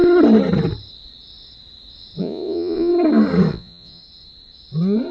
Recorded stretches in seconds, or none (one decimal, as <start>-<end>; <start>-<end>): 0.0-2.2; 2.9-3.5; 4.0-5.1